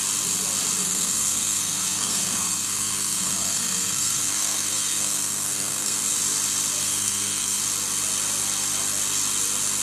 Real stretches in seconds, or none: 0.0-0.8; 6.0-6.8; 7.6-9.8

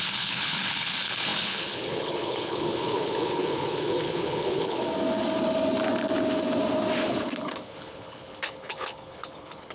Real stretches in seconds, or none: 4.8-7.0

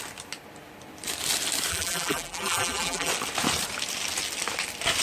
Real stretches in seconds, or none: 0.0-1.7; 3.1-5.0

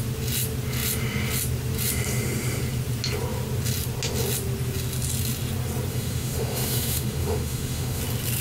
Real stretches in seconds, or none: 0.0-5.9; 8.0-8.4

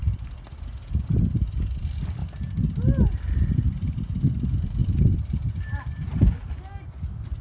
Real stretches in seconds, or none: 0.0-7.4

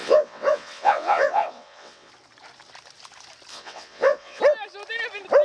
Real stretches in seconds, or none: 2.1-3.5; 4.4-5.4

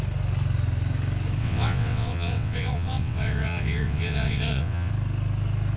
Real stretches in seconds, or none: 0.0-1.4; 4.9-5.8